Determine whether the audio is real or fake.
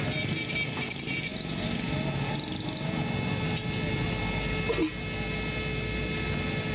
real